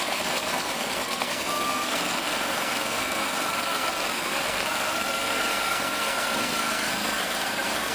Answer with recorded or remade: remade